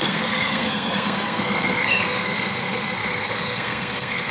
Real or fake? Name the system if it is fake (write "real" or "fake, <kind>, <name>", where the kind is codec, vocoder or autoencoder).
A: fake, codec, SNAC